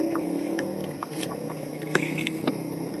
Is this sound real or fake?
fake